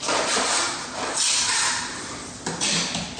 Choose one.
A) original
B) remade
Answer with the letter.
A